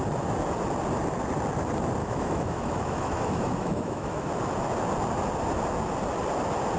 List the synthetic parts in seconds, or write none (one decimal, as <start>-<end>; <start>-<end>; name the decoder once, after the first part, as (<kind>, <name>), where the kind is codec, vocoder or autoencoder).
2.0-4.3 (autoencoder, DAC-VAE)

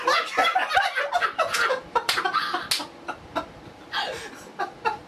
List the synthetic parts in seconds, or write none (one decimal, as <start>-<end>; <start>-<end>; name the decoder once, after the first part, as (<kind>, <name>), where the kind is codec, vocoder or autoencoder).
none

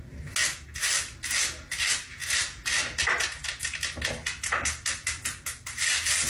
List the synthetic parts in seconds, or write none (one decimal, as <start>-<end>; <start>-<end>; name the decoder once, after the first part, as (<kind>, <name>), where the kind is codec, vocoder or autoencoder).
none

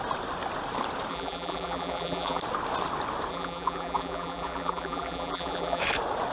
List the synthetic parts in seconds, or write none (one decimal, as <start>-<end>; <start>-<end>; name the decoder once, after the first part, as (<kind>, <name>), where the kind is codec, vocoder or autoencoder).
1.1-2.4 (vocoder, BigVGAN v2); 3.3-5.8

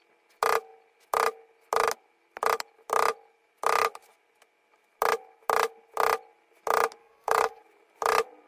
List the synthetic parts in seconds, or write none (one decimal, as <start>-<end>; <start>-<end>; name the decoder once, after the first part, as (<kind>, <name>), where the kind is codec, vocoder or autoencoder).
7.0-7.6 (codec, DAC)

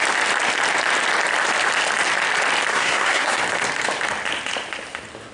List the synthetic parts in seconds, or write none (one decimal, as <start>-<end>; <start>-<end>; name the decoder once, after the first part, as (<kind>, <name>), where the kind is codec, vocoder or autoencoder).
2.7-3.4 (codec, SNAC)